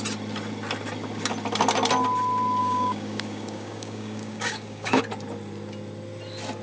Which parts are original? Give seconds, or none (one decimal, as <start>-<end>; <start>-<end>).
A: 0.0-2.6; 5.0-6.6